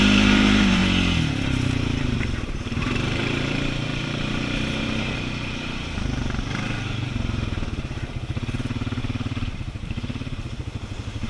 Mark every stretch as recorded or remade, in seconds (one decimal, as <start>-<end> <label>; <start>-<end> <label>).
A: 0.0-0.8 remade; 0.8-1.3 recorded; 1.3-11.3 remade